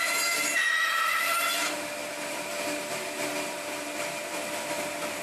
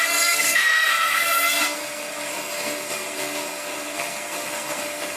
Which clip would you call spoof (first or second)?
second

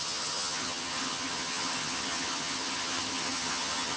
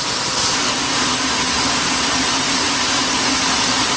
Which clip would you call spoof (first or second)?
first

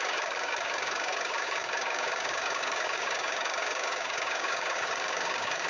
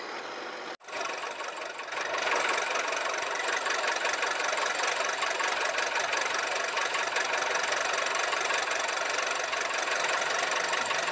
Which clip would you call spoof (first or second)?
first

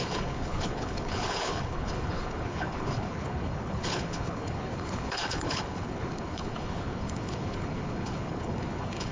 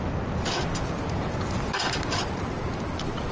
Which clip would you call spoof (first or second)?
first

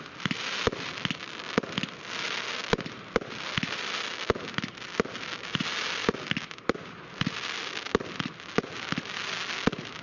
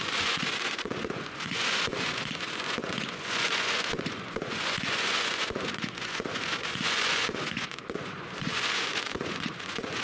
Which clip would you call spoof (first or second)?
second